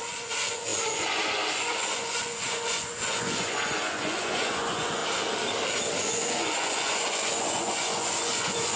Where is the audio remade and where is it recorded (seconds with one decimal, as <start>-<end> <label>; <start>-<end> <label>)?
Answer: 0.0-5.0 remade; 5.0-6.0 recorded; 6.0-8.8 remade